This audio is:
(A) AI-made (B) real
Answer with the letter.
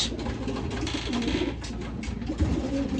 B